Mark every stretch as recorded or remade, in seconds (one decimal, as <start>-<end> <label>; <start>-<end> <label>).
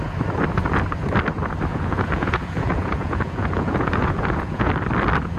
0.0-1.7 recorded; 1.7-4.7 remade; 4.7-5.4 recorded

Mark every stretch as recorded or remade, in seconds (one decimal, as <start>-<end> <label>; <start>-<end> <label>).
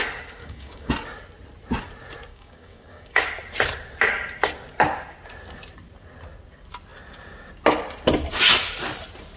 0.0-0.4 recorded; 0.4-0.9 remade; 0.9-2.3 recorded; 2.3-3.2 remade; 3.2-9.4 recorded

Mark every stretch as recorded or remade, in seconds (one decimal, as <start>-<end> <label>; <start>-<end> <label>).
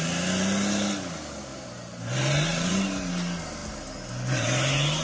0.0-1.5 recorded; 1.5-2.7 remade; 2.7-5.0 recorded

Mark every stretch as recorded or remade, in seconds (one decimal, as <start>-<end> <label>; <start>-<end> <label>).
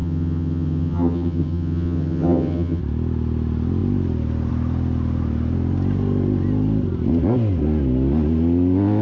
0.0-2.8 remade; 2.8-9.0 recorded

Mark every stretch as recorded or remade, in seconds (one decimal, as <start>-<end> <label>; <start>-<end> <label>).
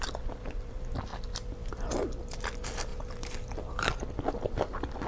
0.0-2.9 recorded; 2.9-3.9 remade; 3.9-5.1 recorded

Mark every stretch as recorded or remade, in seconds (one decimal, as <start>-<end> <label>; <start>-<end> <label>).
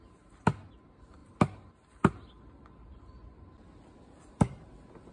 0.0-5.1 recorded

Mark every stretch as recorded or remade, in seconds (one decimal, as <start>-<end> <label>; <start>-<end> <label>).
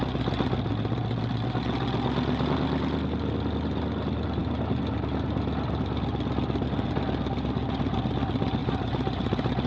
0.0-8.6 recorded; 8.6-9.7 remade